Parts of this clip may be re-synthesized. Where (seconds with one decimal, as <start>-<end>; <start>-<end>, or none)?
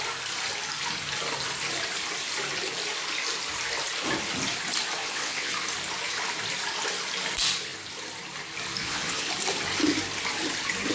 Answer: 5.0-5.5; 8.8-9.3